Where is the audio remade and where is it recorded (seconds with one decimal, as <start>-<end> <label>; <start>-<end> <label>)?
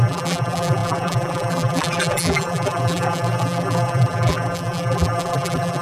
0.0-5.8 remade